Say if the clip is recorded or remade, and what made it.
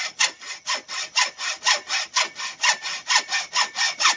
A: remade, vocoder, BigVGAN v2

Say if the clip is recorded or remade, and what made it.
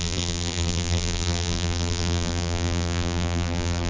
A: remade, vocoder, BigVGAN v2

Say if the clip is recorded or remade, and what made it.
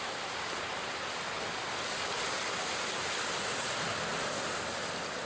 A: recorded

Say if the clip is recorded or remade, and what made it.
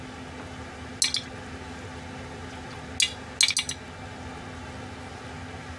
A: recorded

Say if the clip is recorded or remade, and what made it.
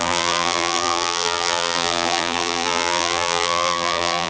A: remade, vocoder, BigVGAN v2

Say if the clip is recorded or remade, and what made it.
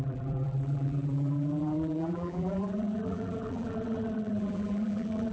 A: remade, vocoder, BigVGAN v2